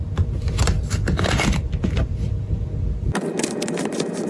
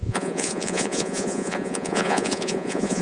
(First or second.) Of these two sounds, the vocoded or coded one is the second